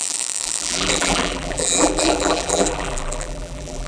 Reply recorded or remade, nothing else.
remade